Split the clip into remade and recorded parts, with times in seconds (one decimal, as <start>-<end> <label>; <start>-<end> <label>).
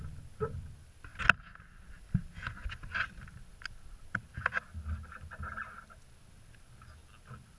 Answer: 0.0-7.6 recorded